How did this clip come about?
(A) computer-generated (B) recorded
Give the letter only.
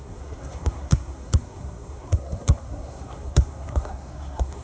A